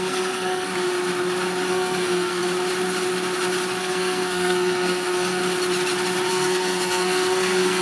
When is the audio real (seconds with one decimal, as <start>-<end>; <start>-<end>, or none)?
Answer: 0.7-1.7; 2.4-3.8; 5.4-6.3